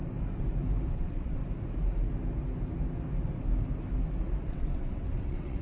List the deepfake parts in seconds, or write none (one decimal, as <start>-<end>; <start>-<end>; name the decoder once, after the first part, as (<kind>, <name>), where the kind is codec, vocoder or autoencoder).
0.9-1.4 (vocoder, WaveNeXt); 4.4-5.6